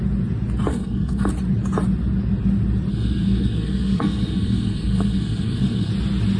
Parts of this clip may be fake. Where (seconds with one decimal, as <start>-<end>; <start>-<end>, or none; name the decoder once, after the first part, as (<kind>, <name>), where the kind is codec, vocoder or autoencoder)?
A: 0.7-1.3 (codec, SNAC); 2.9-5.9